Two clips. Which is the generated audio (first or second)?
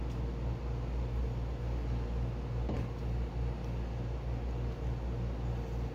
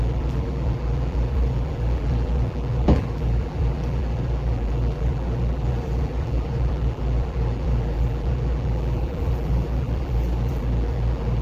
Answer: second